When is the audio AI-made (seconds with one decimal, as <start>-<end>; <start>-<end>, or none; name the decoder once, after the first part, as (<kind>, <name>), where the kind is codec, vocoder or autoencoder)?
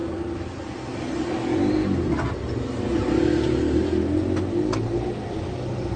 none